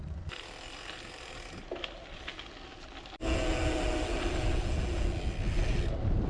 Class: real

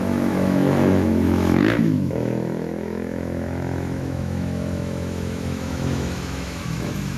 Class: fake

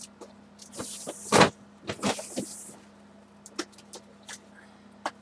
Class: real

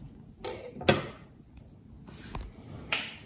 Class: real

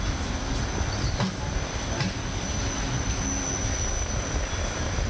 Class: real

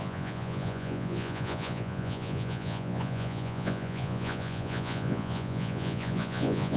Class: fake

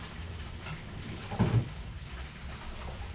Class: real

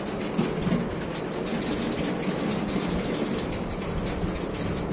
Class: real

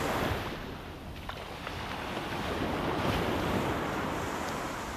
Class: real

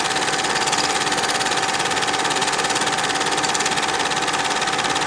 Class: real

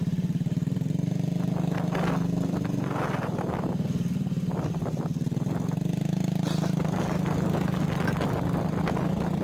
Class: real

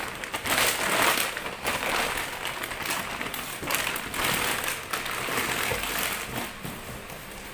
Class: real